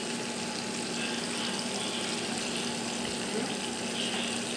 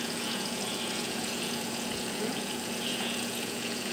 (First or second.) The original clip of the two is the first